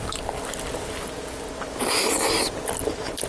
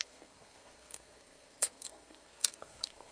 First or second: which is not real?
second